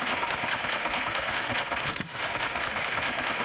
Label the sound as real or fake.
fake